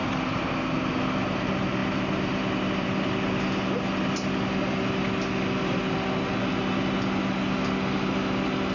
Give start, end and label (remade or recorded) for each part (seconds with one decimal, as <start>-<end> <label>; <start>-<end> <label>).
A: 0.0-8.7 recorded